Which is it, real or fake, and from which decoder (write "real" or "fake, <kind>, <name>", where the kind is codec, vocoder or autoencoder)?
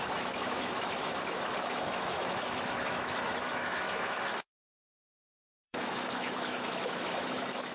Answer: fake, autoencoder, DAC-VAE